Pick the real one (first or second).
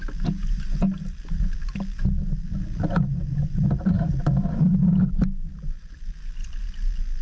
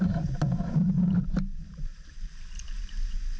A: first